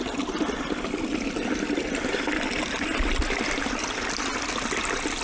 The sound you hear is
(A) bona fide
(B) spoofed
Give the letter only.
A